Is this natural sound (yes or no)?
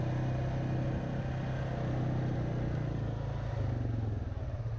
yes